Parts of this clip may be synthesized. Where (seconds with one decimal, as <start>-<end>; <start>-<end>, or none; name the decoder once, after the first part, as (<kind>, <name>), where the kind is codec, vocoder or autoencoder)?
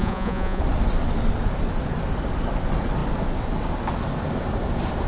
0.0-0.6 (vocoder, Vocos)